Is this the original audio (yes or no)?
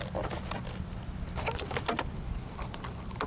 yes